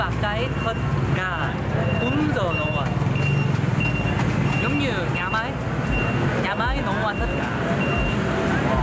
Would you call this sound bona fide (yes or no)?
yes